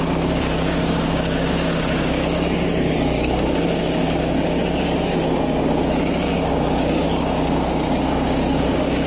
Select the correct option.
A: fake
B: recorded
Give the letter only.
A